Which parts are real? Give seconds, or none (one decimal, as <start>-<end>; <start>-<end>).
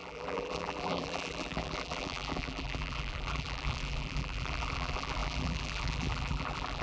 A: none